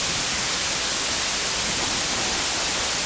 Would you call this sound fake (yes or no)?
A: no